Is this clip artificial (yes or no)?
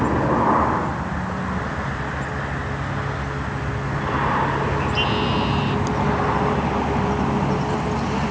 no